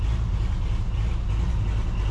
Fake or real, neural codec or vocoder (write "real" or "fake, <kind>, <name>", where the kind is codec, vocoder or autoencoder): real